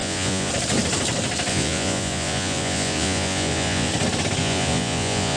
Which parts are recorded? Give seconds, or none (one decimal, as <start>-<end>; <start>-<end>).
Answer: 0.5-1.5; 3.9-4.4